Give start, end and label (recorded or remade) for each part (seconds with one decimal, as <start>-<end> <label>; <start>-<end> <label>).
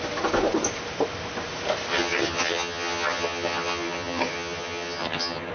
0.0-1.9 recorded; 1.9-5.5 remade